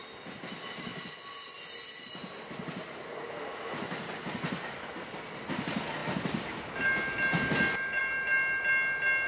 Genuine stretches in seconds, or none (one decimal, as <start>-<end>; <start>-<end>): 0.0-9.3